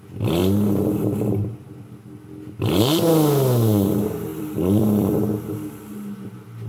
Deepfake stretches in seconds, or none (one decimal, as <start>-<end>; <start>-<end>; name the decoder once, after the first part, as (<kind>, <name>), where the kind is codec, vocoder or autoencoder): 4.3-5.1 (vocoder, BigVGAN v2)